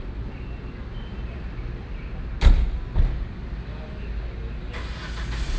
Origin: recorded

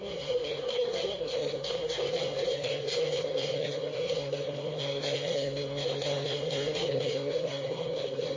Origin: remade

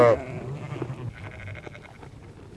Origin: recorded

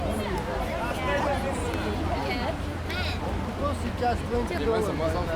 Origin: recorded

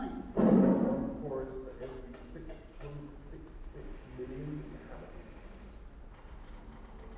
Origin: recorded